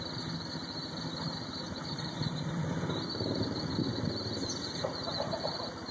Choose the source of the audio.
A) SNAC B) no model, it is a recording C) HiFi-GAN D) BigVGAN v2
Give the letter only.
B